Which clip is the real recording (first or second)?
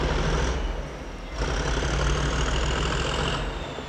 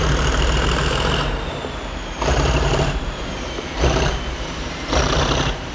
first